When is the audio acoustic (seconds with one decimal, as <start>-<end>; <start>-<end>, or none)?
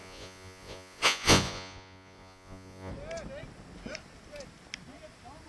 2.9-5.5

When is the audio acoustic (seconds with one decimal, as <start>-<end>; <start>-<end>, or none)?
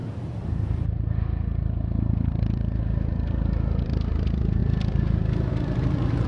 none